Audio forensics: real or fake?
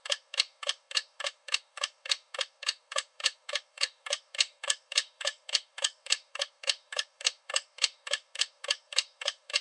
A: fake